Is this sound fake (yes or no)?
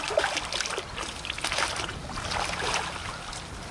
no